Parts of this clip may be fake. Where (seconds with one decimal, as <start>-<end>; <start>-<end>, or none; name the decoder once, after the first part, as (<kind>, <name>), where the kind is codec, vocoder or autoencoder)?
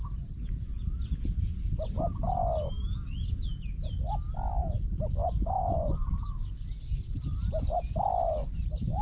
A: 5.2-6.1 (vocoder, Vocos)